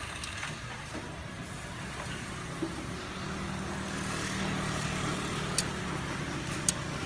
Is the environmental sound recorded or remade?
recorded